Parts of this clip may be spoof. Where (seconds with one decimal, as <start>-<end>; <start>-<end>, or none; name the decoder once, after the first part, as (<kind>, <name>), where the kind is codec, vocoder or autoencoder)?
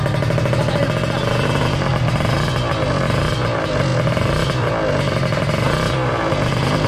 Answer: 0.0-0.6 (vocoder, BigVGAN v2); 1.3-1.9; 3.3-6.9